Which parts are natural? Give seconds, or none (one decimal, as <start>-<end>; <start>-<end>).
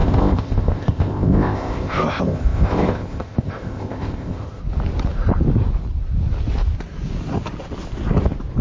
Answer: 4.6-8.6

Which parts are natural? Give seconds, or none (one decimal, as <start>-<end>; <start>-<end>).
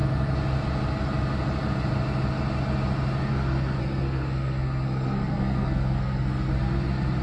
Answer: 0.0-3.8; 6.5-7.2